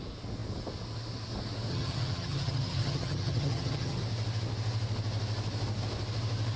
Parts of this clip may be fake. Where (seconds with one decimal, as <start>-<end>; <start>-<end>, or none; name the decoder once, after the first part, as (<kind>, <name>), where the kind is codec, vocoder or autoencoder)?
1.7-4.0 (vocoder, HiFi-GAN)